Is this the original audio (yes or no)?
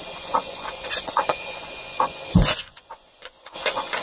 no